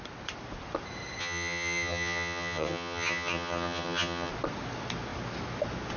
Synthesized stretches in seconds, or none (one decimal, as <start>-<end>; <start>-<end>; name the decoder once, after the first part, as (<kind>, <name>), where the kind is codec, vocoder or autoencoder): 1.2-4.3 (vocoder, HiFi-GAN)